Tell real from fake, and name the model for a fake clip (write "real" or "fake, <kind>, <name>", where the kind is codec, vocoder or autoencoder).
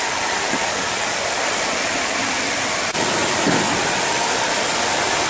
real